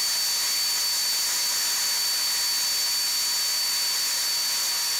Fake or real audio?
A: real